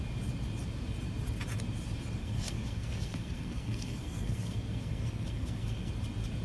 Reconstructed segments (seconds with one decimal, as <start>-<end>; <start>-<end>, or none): 2.2-5.9